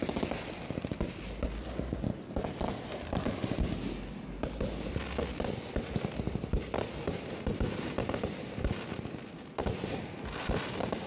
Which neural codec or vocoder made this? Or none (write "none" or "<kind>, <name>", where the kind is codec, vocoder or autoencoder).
none